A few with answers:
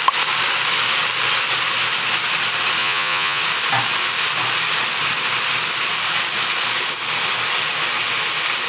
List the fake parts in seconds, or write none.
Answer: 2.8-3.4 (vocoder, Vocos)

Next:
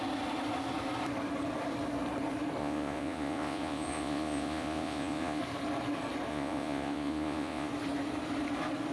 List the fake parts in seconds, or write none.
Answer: 2.6-5.4 (vocoder, Vocos); 6.3-7.7

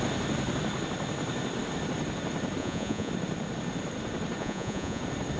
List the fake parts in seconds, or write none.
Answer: 2.6-3.1 (vocoder, Vocos); 4.4-5.0

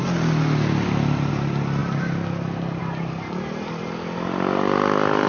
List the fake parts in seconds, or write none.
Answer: none

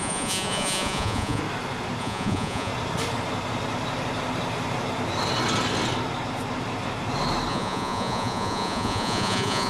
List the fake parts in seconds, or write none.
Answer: 0.0-1.4 (vocoder, Vocos); 2.0-2.7; 7.5-9.7

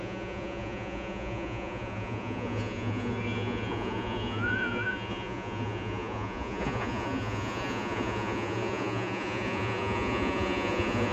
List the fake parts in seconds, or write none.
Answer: 0.0-11.1 (vocoder, Vocos)

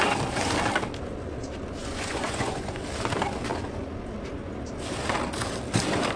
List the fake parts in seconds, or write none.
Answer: 1.8-2.8 (vocoder, Vocos)

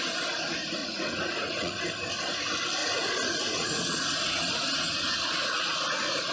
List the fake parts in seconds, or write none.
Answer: 0.8-1.8 (vocoder, Vocos); 2.8-6.3